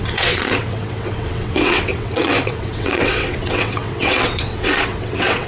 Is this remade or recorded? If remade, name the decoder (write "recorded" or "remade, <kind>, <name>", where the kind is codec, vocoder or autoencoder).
remade, vocoder, WaveNeXt